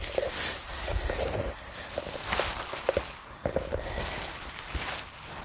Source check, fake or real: real